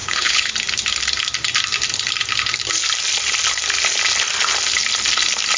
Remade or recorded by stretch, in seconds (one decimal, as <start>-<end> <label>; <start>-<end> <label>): 0.0-0.5 remade; 0.5-5.6 recorded